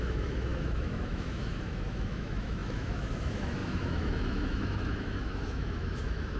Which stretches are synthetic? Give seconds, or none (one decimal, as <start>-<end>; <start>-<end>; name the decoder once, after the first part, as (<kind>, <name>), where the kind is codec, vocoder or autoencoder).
0.0-6.4 (autoencoder, DAC-VAE)